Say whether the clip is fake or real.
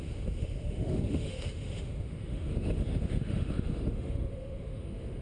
fake